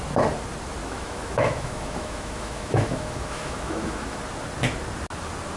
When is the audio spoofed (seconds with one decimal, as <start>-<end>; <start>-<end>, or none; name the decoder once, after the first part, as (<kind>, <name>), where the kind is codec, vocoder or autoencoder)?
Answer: 0.8-4.2 (autoencoder, DAC-VAE)